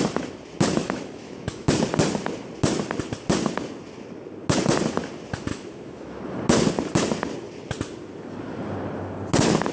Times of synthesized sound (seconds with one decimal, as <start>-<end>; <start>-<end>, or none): 0.8-1.7; 5.5-6.2